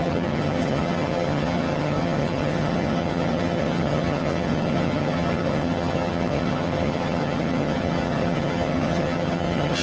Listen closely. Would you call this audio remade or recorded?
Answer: remade